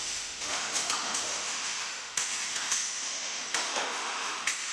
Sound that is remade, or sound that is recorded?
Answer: remade